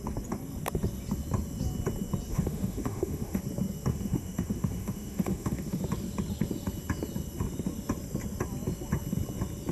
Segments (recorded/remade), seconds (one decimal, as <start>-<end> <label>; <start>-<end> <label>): 0.0-2.3 recorded; 2.3-3.4 remade; 3.4-3.9 recorded; 3.9-5.8 remade; 5.8-9.7 recorded